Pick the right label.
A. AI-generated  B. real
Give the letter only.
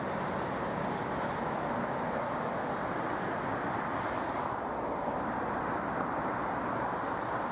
B